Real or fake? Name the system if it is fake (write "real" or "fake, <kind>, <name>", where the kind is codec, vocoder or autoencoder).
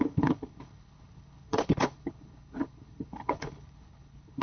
fake, codec, HILCodec